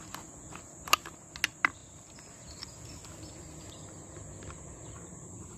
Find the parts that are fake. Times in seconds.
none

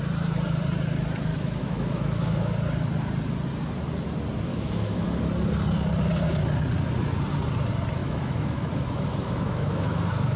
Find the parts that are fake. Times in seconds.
1.3-2.5 (autoencoder, DAC-VAE); 4.5-5.2; 8.0-10.4

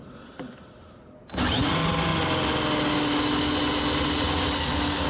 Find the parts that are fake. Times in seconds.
none

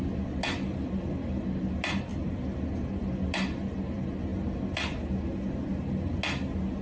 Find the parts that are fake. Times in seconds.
2.1-2.6 (vocoder, BigVGAN v2)

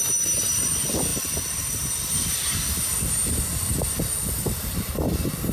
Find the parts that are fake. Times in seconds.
3.2-5.5 (vocoder, BigVGAN v2)

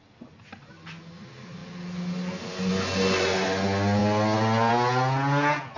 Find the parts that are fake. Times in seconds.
none

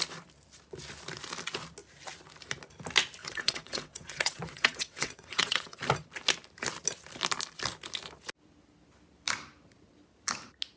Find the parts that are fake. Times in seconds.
3.2-5.8 (vocoder, WaveNeXt)